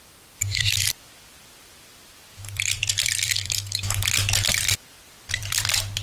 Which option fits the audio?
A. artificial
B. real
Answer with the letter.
A